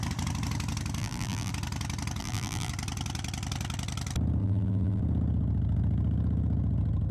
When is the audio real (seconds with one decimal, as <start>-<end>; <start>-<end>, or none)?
0.0-1.0; 1.5-2.2; 2.7-4.4; 5.0-7.1